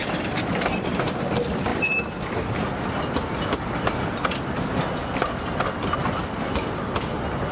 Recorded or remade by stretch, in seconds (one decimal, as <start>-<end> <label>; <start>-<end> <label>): 0.0-7.5 recorded